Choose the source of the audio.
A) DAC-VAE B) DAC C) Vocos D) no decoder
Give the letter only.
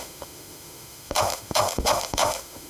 A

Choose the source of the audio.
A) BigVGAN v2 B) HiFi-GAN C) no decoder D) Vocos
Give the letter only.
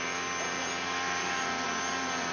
C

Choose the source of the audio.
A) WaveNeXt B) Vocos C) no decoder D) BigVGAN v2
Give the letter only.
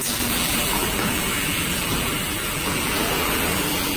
D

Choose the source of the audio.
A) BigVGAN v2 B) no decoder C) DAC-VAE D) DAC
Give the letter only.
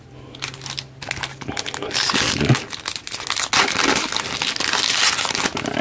B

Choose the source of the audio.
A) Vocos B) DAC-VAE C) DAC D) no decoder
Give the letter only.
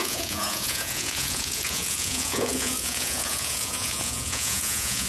A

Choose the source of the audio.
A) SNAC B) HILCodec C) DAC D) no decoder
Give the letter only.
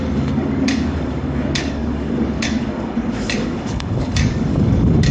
C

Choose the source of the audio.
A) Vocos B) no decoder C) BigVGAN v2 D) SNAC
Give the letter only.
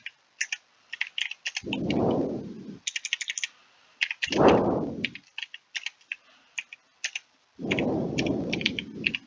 B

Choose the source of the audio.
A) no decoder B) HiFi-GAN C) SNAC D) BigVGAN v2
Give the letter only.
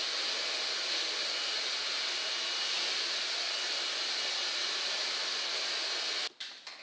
A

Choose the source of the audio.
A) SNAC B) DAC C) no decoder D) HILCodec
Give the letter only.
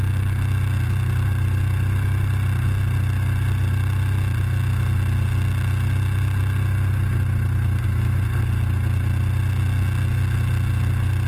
C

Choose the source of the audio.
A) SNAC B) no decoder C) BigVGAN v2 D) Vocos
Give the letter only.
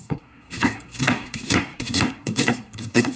A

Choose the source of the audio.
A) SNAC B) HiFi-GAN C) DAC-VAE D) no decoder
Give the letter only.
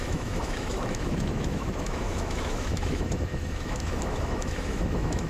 C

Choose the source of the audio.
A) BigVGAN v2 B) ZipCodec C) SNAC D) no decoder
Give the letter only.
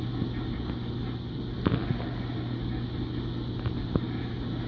D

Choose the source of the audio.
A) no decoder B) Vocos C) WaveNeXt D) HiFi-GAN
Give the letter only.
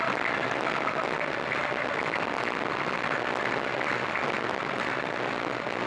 A